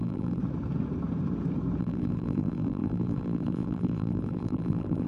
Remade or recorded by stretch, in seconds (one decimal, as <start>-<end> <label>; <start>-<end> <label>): 0.0-0.4 remade; 0.4-1.8 recorded; 1.8-5.1 remade